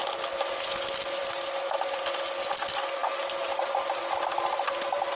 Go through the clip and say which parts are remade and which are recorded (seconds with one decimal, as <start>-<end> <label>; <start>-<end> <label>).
0.0-5.2 recorded